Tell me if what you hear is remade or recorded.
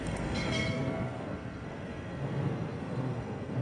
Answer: remade